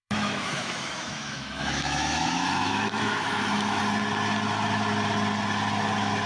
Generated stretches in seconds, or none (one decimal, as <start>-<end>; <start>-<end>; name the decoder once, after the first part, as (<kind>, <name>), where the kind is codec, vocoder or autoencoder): 0.0-3.8 (autoencoder, DAC-VAE)